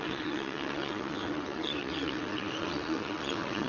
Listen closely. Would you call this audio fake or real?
fake